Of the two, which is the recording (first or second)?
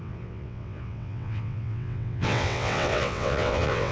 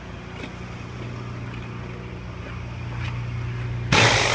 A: second